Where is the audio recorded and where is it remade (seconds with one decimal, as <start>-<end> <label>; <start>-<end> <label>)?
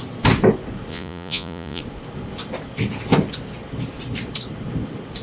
0.0-0.9 recorded; 0.9-1.8 remade; 1.8-5.2 recorded